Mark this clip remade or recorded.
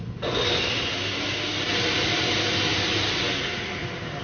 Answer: recorded